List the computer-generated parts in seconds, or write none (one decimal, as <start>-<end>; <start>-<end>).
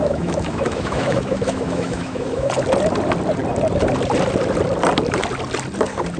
0.0-2.5